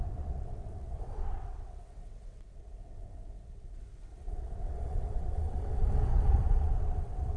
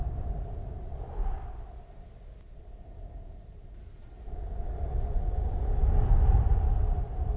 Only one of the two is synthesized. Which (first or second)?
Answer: first